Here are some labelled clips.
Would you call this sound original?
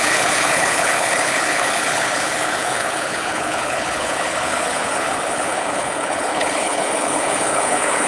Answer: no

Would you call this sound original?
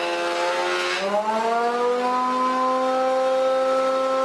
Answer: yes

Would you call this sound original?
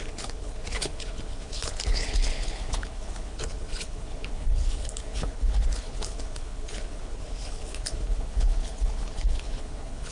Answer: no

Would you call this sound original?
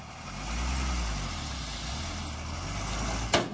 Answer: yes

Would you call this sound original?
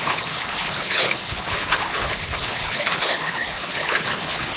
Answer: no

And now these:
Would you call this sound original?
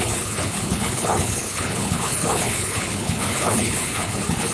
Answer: no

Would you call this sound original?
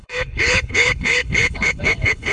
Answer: no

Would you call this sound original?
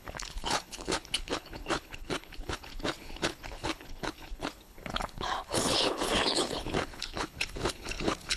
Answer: no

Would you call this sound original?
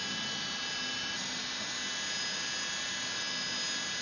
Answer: yes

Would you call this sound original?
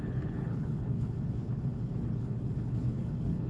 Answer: no